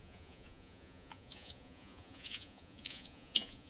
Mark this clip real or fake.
fake